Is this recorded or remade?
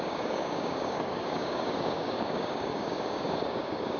remade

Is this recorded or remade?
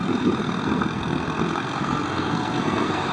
remade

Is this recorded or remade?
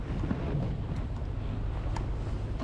recorded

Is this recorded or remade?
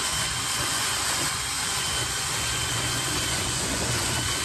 remade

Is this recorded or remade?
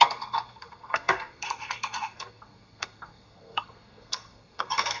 remade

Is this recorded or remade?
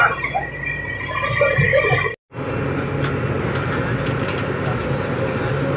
recorded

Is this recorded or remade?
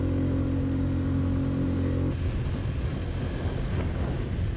recorded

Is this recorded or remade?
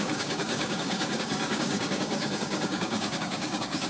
remade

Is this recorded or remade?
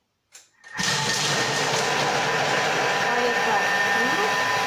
recorded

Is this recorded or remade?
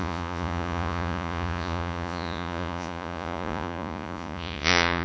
remade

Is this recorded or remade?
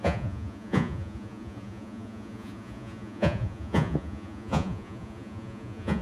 remade